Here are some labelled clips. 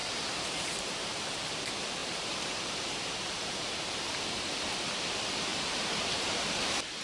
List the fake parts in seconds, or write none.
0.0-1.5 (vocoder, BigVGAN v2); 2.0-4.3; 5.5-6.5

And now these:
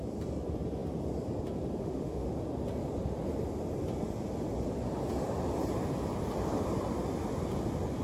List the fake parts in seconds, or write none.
1.8-2.3 (autoencoder, DAC-VAE)